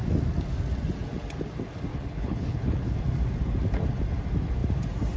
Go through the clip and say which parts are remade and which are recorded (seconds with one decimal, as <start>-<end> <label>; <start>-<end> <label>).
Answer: 0.0-1.9 recorded; 1.9-3.0 remade; 3.0-5.2 recorded